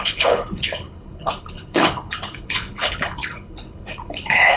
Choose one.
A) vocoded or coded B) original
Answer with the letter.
A